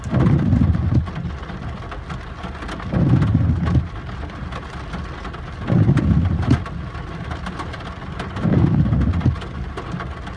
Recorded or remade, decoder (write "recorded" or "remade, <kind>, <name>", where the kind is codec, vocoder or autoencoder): recorded